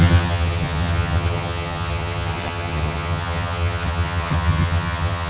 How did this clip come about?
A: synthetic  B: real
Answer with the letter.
A